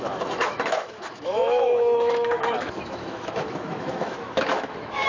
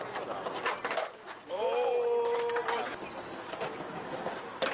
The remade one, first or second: first